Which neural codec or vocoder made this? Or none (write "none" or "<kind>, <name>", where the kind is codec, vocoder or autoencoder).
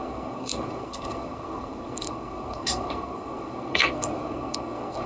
codec, SNAC